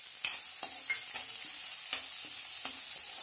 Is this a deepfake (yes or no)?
no